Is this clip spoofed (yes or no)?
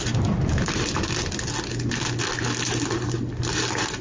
no